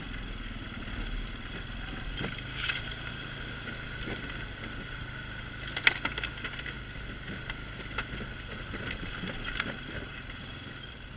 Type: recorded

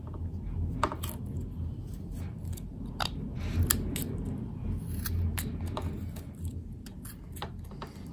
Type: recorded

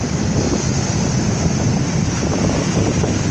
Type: recorded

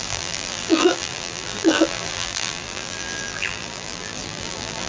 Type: remade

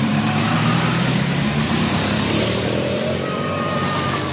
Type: remade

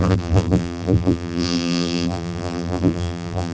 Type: remade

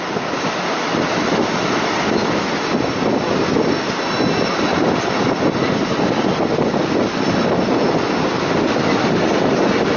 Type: recorded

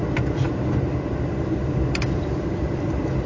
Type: remade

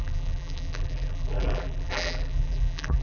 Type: remade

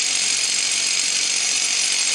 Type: recorded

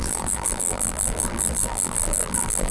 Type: remade